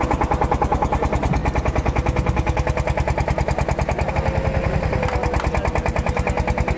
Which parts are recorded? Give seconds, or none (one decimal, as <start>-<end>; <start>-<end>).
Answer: 0.0-6.8